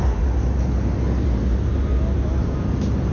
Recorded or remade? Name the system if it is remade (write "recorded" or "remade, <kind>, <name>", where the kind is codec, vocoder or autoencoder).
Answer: recorded